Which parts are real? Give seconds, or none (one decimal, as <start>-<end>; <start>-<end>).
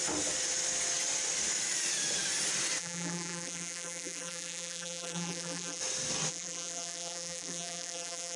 0.0-2.8; 5.8-6.3